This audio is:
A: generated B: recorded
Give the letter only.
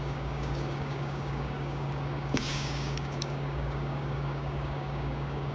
A